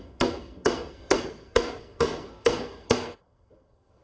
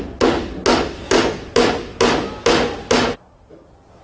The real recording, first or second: second